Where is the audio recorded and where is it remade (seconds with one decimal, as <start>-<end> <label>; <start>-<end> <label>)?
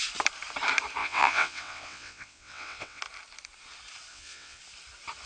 0.0-1.0 recorded; 1.0-3.0 remade; 3.0-4.1 recorded; 4.1-4.6 remade; 4.6-5.3 recorded